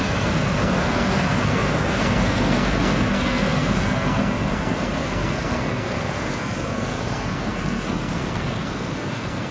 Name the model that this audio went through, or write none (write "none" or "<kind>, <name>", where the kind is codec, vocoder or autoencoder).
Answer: codec, SNAC